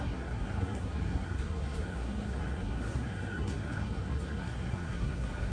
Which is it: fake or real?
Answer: fake